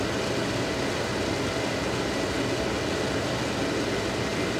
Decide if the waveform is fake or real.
real